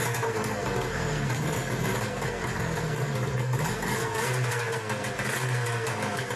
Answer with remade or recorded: remade